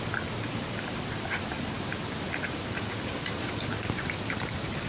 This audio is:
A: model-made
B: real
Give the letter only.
A